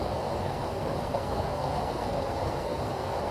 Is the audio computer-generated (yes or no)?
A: yes